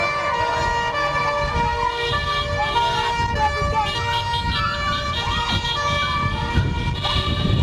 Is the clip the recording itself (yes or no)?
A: yes